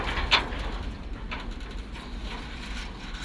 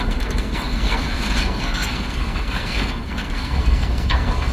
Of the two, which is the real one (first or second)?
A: first